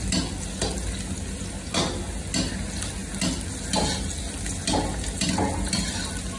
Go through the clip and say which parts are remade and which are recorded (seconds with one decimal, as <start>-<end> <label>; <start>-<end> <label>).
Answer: 0.0-6.4 recorded